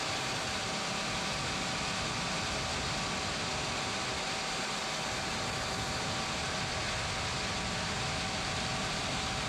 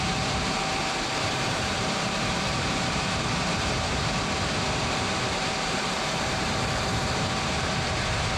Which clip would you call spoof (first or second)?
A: second